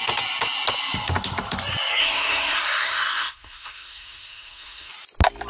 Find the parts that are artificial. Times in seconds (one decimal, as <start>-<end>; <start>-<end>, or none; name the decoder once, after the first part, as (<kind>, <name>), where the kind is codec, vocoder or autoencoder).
2.0-4.9 (codec, SNAC)